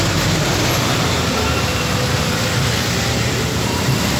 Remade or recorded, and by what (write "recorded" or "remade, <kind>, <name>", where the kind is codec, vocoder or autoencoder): recorded